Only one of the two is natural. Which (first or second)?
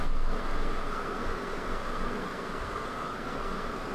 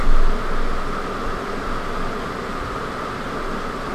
second